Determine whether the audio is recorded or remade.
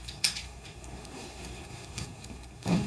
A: remade